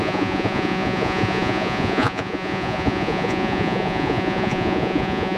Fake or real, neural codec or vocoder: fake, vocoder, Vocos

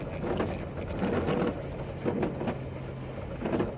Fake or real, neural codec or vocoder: real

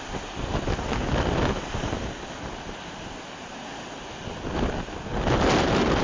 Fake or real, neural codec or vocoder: real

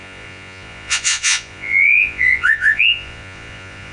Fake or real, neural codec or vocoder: fake, vocoder, Vocos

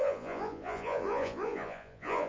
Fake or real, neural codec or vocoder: fake, vocoder, Vocos